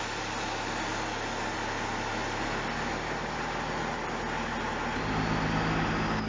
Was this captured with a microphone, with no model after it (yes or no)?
yes